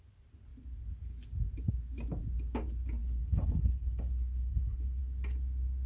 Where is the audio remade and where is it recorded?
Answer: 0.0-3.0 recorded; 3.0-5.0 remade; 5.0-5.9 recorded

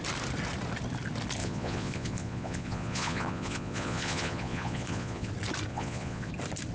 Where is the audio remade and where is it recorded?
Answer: 0.0-1.4 recorded; 1.4-5.3 remade; 5.3-5.7 recorded; 5.7-6.3 remade; 6.3-6.7 recorded

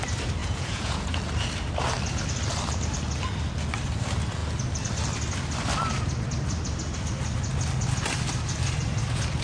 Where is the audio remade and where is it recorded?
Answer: 0.0-0.4 recorded; 0.4-1.2 remade; 1.2-9.4 recorded

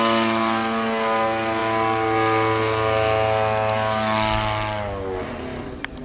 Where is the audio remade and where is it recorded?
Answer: 0.0-6.0 recorded